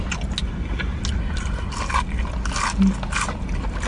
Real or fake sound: real